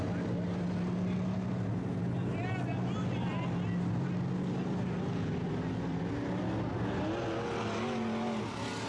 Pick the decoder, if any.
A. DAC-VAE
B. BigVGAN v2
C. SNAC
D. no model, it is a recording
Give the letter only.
D